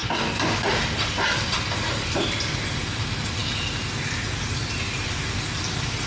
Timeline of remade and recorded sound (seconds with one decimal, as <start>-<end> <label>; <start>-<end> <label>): 0.0-6.1 recorded